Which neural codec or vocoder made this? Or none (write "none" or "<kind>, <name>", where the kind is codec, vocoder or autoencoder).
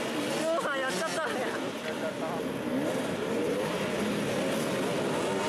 none